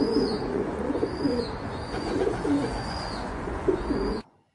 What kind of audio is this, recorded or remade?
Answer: remade